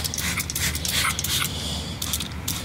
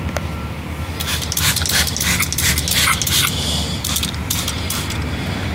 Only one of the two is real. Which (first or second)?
first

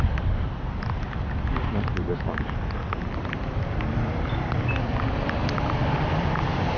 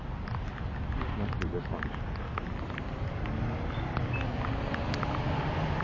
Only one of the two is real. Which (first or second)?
second